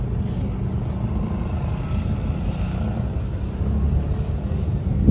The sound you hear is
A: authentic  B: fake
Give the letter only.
A